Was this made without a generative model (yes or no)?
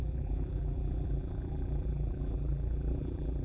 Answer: no